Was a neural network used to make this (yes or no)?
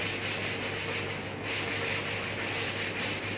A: no